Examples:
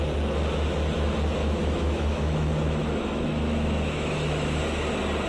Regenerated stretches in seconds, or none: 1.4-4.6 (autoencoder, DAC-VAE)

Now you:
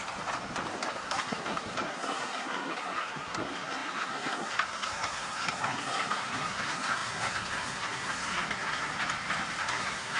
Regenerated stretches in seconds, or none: 0.9-8.9 (codec, SNAC); 9.6-10.2